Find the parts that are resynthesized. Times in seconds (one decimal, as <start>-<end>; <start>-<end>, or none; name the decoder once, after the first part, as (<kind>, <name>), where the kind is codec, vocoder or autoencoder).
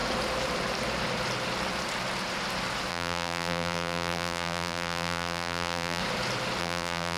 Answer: 2.9-6.0 (vocoder, BigVGAN v2); 6.6-7.2